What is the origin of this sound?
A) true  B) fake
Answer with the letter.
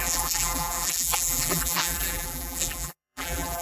B